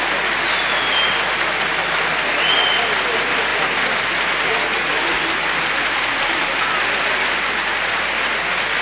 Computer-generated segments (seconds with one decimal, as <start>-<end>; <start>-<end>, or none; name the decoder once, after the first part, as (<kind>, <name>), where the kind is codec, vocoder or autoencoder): 5.8-6.5 (vocoder, BigVGAN v2)